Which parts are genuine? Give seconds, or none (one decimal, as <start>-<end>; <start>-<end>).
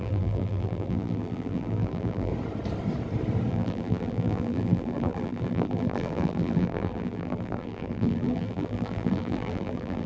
2.3-3.5